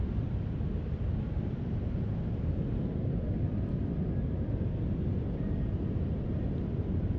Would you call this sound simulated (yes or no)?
yes